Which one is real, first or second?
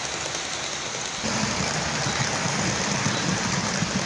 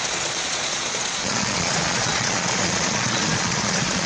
first